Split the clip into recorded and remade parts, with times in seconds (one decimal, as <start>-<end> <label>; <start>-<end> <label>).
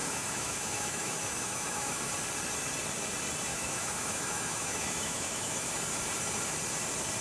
0.0-2.0 remade; 2.0-3.5 recorded; 3.5-5.7 remade; 5.7-7.2 recorded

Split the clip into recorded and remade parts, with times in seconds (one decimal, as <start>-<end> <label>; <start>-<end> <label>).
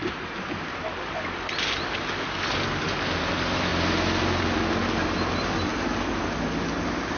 0.0-7.2 recorded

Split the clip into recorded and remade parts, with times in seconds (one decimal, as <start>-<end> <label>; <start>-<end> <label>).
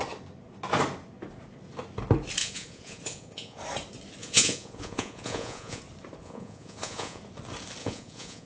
0.0-2.4 recorded; 2.4-3.6 remade; 3.6-4.2 recorded; 4.2-5.8 remade; 5.8-6.2 recorded; 6.2-7.2 remade; 7.2-7.8 recorded; 7.8-8.5 remade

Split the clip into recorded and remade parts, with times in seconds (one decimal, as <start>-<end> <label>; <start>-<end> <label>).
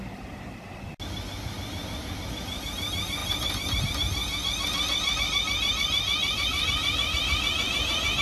0.0-8.2 recorded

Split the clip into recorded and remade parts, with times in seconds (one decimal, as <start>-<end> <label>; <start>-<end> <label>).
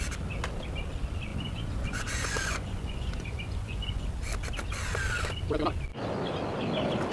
0.0-1.3 recorded; 1.3-4.1 remade; 4.1-7.1 recorded